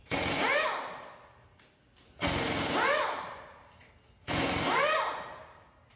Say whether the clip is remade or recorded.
recorded